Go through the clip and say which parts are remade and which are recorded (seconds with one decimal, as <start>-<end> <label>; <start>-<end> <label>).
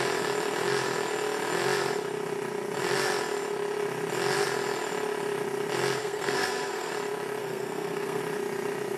0.0-6.0 recorded; 6.0-6.9 remade; 6.9-7.4 recorded; 7.4-8.2 remade; 8.2-9.0 recorded